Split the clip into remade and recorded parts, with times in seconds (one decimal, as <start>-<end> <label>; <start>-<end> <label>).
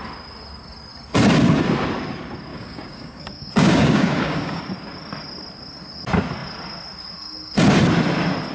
0.0-2.5 recorded; 2.5-4.6 remade; 4.6-8.5 recorded